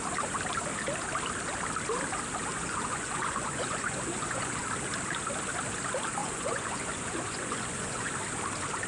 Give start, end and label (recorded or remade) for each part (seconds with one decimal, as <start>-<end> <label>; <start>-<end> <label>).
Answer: 0.0-2.5 recorded; 2.5-4.6 remade; 4.6-6.2 recorded; 6.2-8.1 remade; 8.1-8.9 recorded